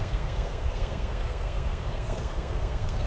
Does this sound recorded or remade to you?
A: remade